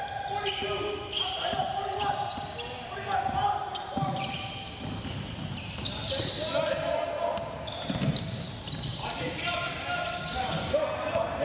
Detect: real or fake real